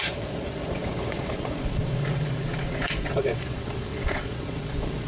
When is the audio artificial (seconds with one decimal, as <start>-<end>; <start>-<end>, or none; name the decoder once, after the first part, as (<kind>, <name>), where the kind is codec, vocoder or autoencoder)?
0.0-5.1 (vocoder, Vocos)